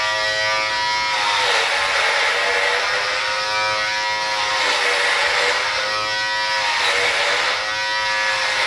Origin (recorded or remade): recorded